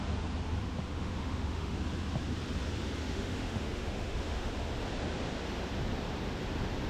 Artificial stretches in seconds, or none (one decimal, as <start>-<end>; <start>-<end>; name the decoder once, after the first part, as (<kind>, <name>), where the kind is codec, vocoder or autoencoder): 0.9-1.8 (autoencoder, DAC-VAE); 3.0-4.5